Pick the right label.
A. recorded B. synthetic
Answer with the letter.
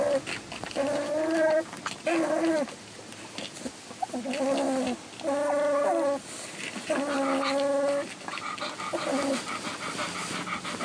A